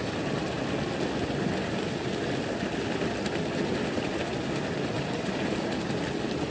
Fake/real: real